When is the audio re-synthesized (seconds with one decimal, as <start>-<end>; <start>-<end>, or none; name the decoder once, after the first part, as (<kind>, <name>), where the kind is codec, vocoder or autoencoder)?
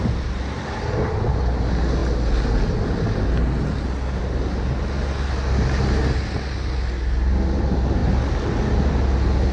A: none